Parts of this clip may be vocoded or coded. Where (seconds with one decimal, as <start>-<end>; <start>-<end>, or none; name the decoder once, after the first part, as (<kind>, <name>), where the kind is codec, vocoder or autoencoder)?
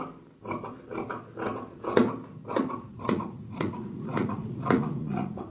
2.5-5.5 (vocoder, Vocos)